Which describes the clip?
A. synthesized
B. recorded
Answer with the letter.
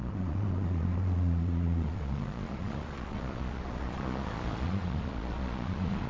A